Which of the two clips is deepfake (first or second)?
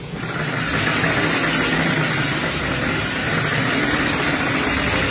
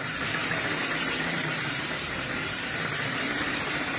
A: second